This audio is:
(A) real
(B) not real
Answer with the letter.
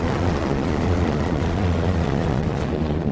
B